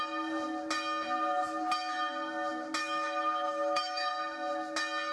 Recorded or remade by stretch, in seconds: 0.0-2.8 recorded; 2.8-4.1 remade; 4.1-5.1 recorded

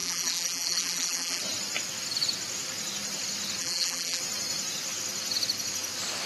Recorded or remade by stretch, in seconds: 0.0-1.4 remade; 1.4-3.6 recorded; 3.6-4.2 remade; 4.2-6.3 recorded

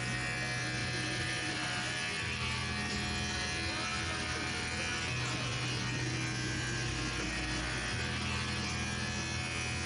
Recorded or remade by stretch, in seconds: 0.0-0.8 recorded; 0.8-1.5 remade; 1.5-9.9 recorded

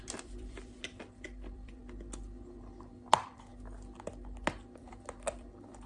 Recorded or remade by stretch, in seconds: 0.0-1.8 remade; 1.8-3.1 recorded; 3.1-3.5 remade; 3.5-4.8 recorded; 4.8-5.9 remade

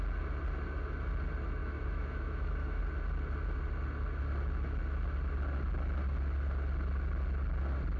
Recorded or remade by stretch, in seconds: 0.0-1.6 recorded; 1.6-2.8 remade; 2.8-8.0 recorded

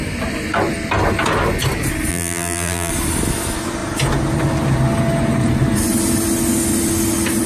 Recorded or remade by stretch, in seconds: 0.0-2.1 recorded; 2.1-2.9 remade; 2.9-7.5 recorded

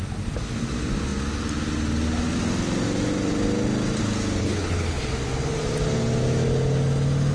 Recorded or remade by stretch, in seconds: 0.0-4.4 recorded; 4.4-5.0 remade; 5.0-7.3 recorded

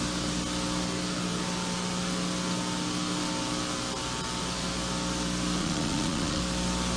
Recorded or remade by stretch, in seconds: 0.0-5.6 recorded; 5.6-6.4 remade; 6.4-7.0 recorded